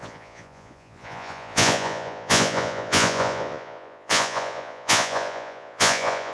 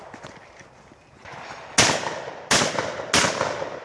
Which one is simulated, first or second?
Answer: first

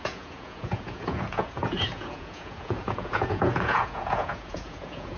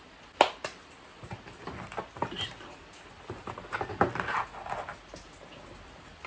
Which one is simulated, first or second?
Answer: first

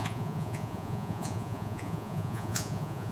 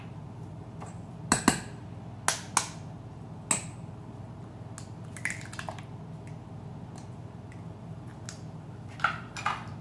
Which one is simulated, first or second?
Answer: first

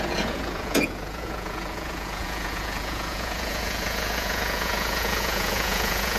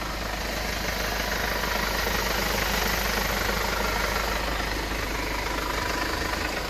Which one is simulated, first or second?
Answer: first